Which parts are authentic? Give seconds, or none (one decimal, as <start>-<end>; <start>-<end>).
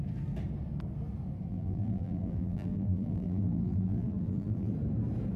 0.0-1.5; 4.7-5.4